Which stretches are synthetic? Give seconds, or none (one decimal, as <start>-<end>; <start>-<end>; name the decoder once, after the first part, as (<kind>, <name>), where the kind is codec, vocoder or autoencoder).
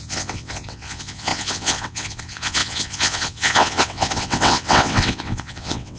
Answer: 0.0-6.0 (vocoder, WaveNeXt)